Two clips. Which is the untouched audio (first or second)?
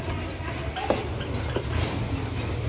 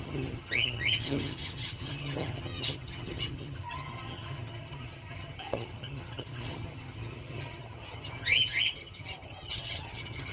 first